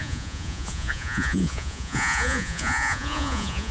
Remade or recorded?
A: remade